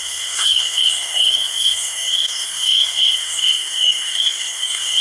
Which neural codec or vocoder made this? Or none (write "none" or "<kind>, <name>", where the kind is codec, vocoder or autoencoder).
codec, SNAC